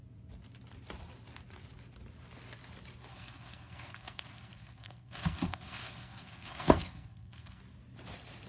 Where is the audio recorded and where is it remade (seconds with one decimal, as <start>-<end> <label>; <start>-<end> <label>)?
0.0-3.1 recorded; 3.1-7.6 remade; 7.6-8.5 recorded